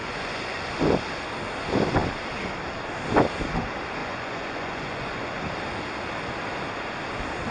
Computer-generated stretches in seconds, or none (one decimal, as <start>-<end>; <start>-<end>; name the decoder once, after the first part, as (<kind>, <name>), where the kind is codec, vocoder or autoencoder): 0.0-0.7 (vocoder, Vocos); 4.0-5.4